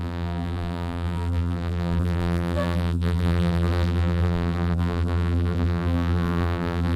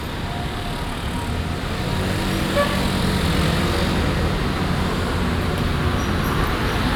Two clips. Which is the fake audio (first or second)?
first